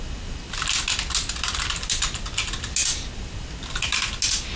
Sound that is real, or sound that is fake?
real